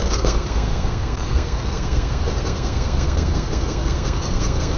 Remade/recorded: remade